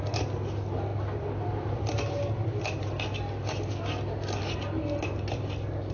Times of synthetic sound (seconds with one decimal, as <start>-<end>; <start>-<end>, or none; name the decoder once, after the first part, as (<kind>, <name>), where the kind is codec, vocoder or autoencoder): none